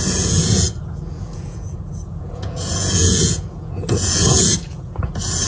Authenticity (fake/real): fake